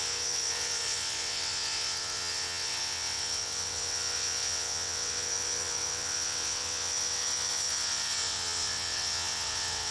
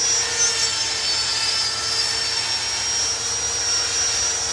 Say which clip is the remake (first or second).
first